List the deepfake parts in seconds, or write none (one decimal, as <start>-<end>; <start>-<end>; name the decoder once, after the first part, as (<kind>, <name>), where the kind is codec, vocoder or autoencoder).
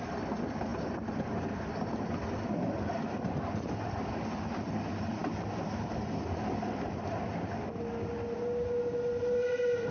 none